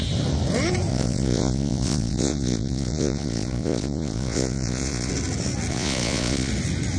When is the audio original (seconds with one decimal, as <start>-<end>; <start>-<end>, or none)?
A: 0.0-0.9; 5.1-5.7; 6.5-7.0